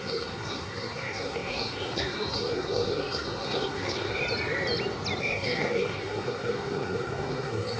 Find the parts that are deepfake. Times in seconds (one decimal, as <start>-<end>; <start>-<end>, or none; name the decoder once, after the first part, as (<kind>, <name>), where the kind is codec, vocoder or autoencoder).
0.0-4.2 (codec, SNAC); 5.2-7.8